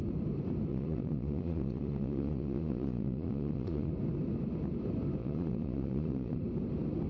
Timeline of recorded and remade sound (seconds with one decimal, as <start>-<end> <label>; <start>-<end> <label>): 0.0-0.7 recorded; 0.7-3.9 remade; 3.9-5.2 recorded; 5.2-6.4 remade; 6.4-7.1 recorded